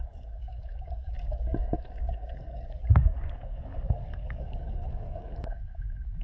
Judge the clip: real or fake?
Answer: fake